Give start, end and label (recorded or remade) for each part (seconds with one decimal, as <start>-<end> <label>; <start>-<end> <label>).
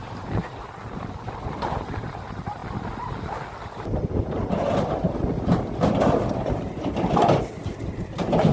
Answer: 0.0-8.5 recorded